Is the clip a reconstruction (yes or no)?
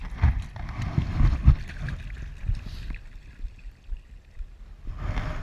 no